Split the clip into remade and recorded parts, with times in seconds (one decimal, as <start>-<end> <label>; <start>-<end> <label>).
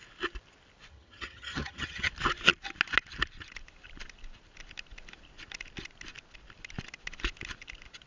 0.0-0.9 recorded; 0.9-2.1 remade; 2.1-8.1 recorded